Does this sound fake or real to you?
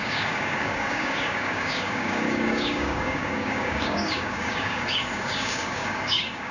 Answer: fake